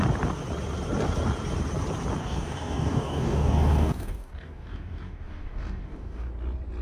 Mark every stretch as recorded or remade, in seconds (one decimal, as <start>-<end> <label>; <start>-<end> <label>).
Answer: 0.0-2.2 recorded; 2.2-6.3 remade; 6.3-6.8 recorded